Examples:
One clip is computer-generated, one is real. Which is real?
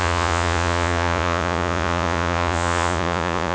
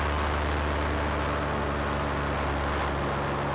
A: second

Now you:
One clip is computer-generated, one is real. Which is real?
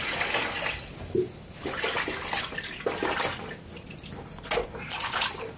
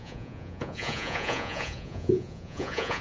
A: first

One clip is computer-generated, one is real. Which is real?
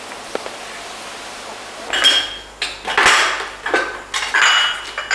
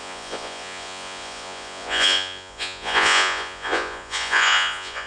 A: first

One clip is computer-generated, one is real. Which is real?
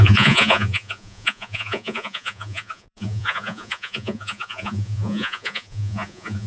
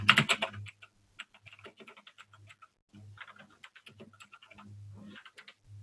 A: second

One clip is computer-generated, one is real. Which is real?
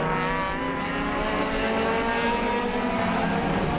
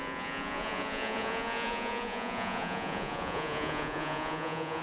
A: first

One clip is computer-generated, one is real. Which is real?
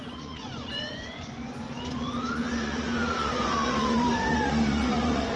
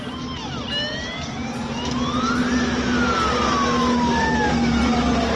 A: second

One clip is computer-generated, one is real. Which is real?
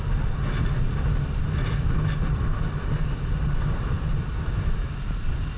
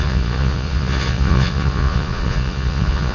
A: first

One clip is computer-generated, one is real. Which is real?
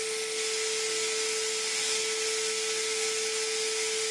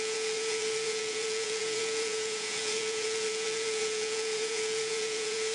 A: first